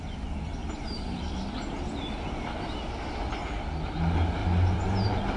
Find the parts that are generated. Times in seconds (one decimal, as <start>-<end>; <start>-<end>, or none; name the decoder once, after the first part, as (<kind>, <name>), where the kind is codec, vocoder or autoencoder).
0.6-1.2 (vocoder, BigVGAN v2); 4.4-5.4